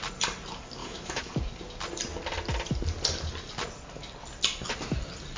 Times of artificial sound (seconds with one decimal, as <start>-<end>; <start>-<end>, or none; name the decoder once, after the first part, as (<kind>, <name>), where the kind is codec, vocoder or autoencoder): 0.8-1.3 (autoencoder, DAC-VAE)